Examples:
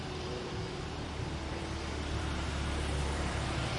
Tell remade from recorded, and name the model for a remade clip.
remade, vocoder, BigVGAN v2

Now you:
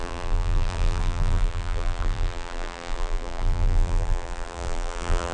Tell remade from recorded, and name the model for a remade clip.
remade, vocoder, BigVGAN v2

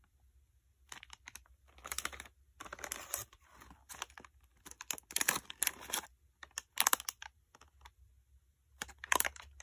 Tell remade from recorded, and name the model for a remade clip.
recorded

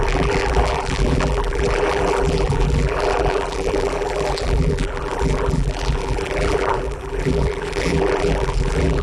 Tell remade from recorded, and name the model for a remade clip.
remade, vocoder, BigVGAN v2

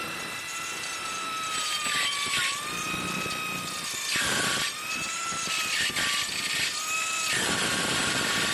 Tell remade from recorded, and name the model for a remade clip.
remade, vocoder, BigVGAN v2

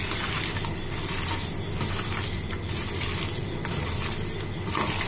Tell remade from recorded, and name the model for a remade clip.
recorded